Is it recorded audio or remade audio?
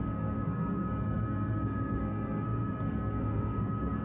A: remade